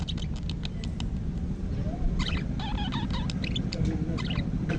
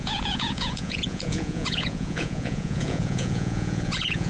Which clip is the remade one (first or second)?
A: second